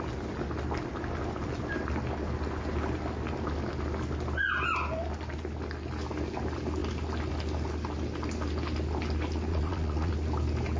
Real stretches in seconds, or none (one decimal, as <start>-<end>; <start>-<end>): 0.0-9.5; 10.1-10.8